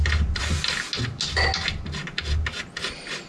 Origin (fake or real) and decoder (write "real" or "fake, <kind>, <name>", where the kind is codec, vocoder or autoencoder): real